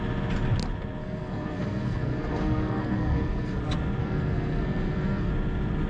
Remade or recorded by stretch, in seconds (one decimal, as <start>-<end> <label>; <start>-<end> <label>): 0.0-1.0 recorded; 1.0-3.6 remade; 3.6-4.0 recorded; 4.0-5.3 remade; 5.3-5.9 recorded

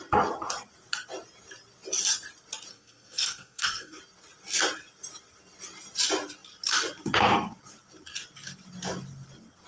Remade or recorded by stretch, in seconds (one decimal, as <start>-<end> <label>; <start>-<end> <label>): 0.0-2.7 recorded; 2.7-4.0 remade; 4.0-9.7 recorded

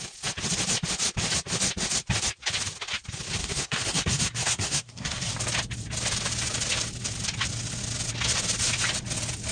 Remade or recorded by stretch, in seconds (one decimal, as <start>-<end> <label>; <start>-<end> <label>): 0.0-3.4 recorded; 3.4-5.3 remade; 5.3-9.5 recorded

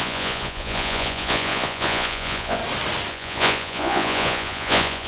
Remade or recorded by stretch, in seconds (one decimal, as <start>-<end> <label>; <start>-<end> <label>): 0.0-2.6 remade; 2.6-3.1 recorded; 3.1-5.1 remade

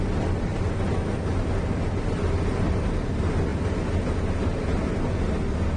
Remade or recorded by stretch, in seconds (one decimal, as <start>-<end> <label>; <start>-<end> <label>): 0.0-0.5 remade; 0.5-1.9 recorded; 1.9-3.5 remade; 3.5-5.8 recorded

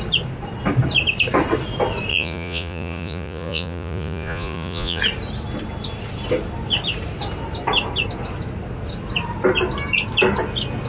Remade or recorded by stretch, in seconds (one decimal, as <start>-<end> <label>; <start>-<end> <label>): 0.0-2.1 recorded; 2.1-5.0 remade; 5.0-10.9 recorded

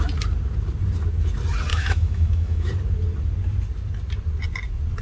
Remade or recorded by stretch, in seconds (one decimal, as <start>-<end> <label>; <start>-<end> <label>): 0.0-1.7 recorded; 1.7-2.7 remade; 2.7-5.0 recorded

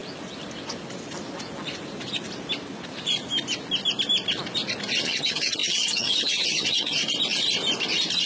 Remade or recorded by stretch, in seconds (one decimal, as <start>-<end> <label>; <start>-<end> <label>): 0.0-5.0 recorded; 5.0-7.0 remade; 7.0-8.3 recorded